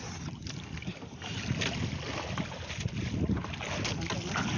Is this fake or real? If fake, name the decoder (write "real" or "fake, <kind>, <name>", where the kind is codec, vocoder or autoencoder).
real